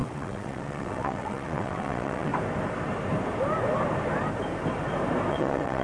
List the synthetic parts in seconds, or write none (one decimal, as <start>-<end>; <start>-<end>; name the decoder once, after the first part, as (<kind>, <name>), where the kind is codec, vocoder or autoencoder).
0.0-2.3 (vocoder, WaveNeXt); 5.3-5.8